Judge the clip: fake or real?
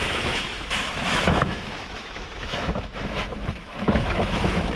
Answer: fake